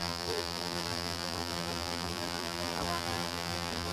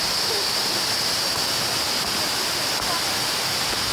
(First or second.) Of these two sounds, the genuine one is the second